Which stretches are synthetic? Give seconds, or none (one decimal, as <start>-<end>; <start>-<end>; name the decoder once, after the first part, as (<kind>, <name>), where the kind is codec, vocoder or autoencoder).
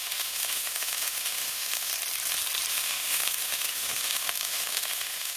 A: 0.0-1.9 (autoencoder, DAC-VAE); 2.7-5.4